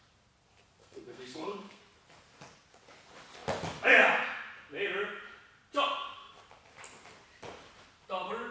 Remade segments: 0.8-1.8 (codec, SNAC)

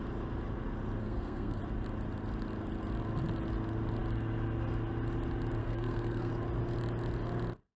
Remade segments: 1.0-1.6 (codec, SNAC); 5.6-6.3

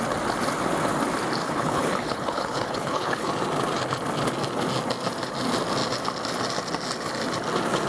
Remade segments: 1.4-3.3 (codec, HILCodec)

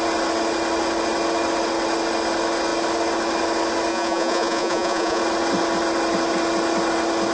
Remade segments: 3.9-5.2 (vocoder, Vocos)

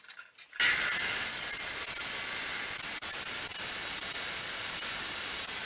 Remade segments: none

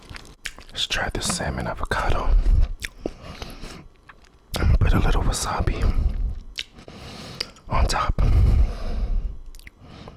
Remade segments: none

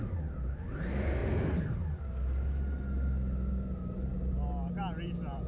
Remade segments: none